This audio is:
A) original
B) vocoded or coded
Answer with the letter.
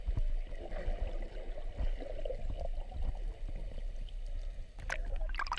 A